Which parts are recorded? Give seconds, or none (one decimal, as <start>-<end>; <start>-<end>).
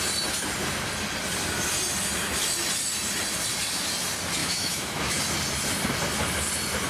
0.0-4.4; 5.2-6.9